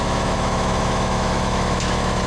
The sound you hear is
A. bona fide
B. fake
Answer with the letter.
B